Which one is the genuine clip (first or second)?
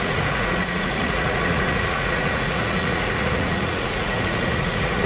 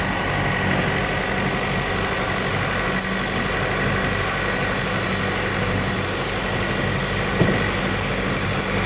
second